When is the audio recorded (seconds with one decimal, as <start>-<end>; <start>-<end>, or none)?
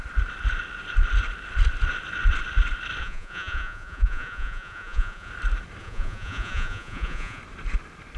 0.0-3.0; 5.3-5.8; 7.4-8.2